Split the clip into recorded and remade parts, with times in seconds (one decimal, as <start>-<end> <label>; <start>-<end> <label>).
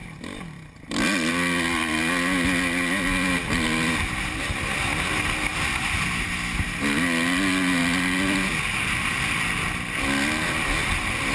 0.0-11.3 recorded